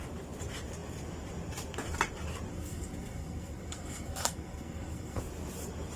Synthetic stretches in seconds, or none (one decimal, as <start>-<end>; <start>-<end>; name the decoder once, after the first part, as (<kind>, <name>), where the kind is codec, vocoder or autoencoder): 2.5-5.2 (codec, SNAC)